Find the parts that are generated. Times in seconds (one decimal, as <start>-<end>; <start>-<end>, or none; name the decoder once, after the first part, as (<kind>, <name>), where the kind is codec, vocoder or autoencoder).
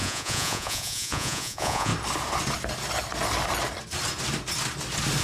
0.0-1.9 (vocoder, Vocos)